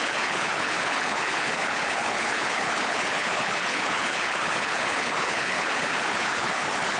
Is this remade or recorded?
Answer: remade